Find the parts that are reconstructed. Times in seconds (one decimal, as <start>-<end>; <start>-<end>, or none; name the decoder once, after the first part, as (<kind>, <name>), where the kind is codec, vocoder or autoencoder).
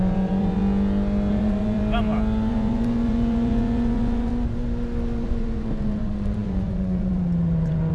0.0-0.6 (vocoder, Vocos); 1.3-1.8; 2.5-4.3; 5.3-7.9